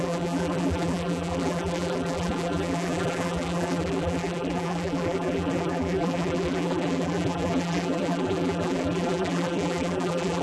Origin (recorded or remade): remade